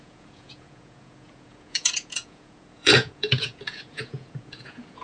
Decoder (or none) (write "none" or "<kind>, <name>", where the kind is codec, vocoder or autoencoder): vocoder, Vocos